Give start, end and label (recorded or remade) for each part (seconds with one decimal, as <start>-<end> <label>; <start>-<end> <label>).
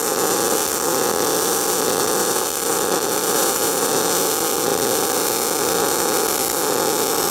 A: 0.0-2.2 recorded; 2.2-3.9 remade; 3.9-7.3 recorded